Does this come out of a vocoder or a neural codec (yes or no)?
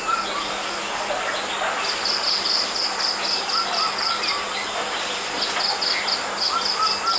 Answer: no